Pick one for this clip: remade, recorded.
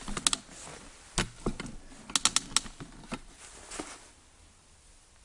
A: recorded